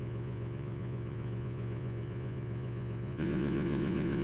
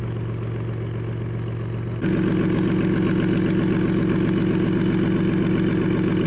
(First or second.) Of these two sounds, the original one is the second